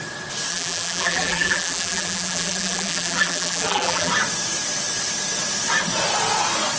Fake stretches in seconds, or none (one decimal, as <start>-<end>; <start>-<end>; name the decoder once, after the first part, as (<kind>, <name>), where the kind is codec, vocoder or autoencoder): 0.5-4.1 (vocoder, BigVGAN v2)